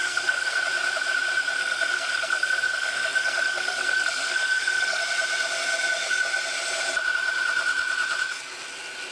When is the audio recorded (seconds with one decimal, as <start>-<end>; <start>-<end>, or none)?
0.6-1.6; 5.0-9.1